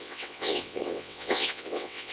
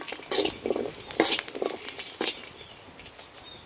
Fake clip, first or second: first